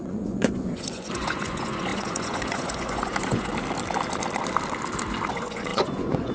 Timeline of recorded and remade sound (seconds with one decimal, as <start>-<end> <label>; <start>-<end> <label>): 0.0-3.5 remade; 3.5-5.3 recorded; 5.3-6.3 remade